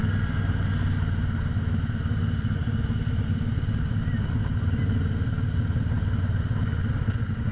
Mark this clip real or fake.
real